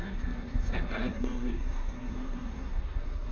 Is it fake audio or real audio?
fake